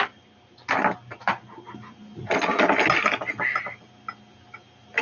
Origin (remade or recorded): recorded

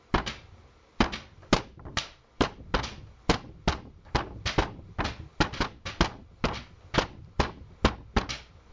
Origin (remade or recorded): recorded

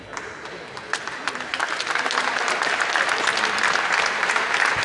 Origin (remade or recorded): recorded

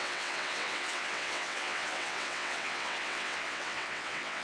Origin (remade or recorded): remade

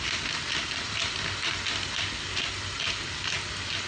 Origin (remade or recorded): recorded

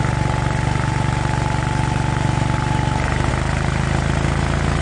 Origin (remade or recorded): recorded